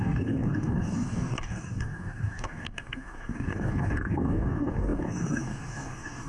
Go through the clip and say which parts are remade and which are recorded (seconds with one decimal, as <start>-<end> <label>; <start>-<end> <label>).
0.0-6.3 remade